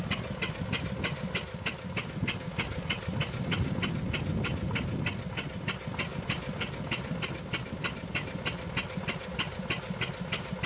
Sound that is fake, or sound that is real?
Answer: real